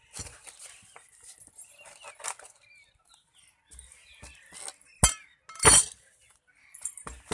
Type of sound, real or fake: real